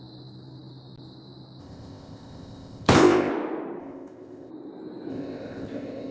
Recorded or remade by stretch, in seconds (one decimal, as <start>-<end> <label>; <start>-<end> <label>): 0.0-1.6 recorded; 1.6-3.3 remade; 3.3-3.8 recorded; 3.8-4.5 remade; 4.5-5.1 recorded; 5.1-6.1 remade